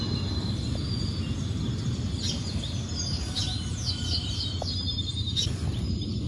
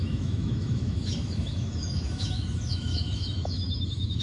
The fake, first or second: second